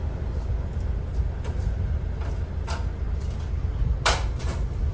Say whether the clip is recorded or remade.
recorded